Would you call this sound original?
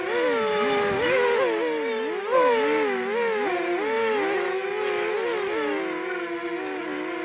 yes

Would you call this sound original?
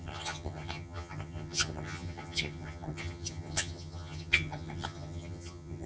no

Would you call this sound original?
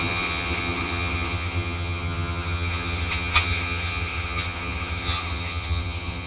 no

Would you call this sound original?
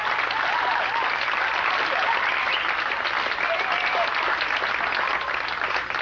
yes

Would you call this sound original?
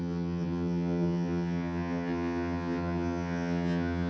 no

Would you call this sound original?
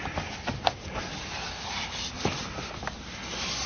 yes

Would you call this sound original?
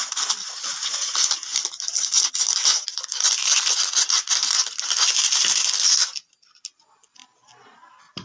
yes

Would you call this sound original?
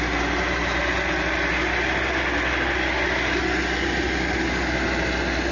yes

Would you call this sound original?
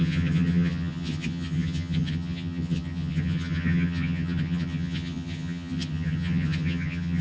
no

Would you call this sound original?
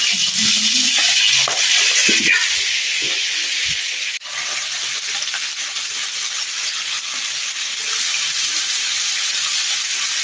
yes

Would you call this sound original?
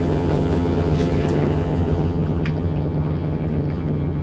no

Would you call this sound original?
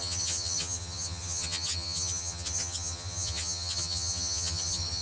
no